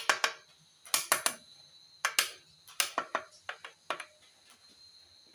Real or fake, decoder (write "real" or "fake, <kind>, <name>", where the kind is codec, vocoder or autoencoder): real